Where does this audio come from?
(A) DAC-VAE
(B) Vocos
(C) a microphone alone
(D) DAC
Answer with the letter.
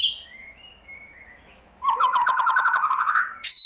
A